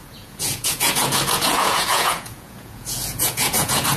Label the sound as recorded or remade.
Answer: remade